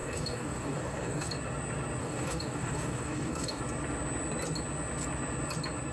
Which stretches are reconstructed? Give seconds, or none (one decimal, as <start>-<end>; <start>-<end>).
0.0-1.3; 2.0-3.6